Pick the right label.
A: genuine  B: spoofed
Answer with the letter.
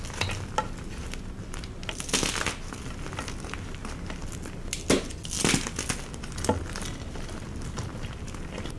A